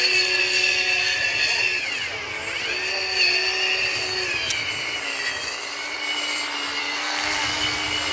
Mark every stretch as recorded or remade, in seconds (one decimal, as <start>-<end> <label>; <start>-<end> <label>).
0.0-6.8 recorded; 6.8-7.4 remade; 7.4-8.1 recorded